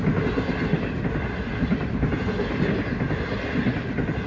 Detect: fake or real real